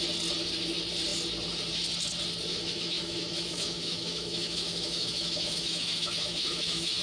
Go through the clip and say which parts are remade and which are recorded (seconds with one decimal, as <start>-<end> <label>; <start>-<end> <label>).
0.0-2.5 recorded; 2.5-7.0 remade